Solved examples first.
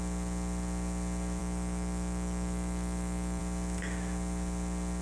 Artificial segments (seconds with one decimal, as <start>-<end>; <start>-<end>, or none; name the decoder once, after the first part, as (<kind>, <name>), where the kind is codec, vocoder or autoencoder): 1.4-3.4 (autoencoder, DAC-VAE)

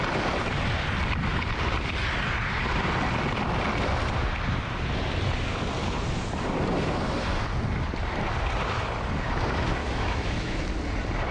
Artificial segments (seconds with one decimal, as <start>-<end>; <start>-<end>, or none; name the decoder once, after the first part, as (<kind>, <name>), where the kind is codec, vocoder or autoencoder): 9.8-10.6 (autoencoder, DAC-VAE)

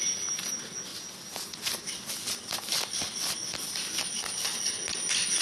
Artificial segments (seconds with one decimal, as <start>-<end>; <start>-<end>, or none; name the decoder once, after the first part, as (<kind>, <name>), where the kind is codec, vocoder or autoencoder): none

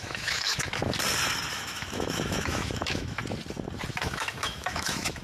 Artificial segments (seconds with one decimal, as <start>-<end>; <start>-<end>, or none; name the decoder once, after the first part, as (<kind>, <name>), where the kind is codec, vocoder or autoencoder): 0.0-0.8 (autoencoder, DAC-VAE); 1.5-3.2; 3.9-5.2

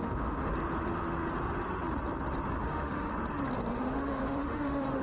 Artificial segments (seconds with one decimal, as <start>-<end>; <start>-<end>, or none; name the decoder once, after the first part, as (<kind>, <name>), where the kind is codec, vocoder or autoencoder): 0.0-0.5 (autoencoder, DAC-VAE); 2.6-3.1; 3.7-5.0